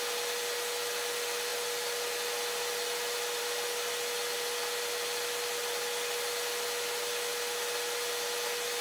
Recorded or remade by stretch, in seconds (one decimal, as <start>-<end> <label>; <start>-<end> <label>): 0.0-8.8 recorded